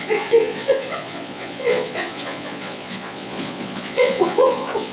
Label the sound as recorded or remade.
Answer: remade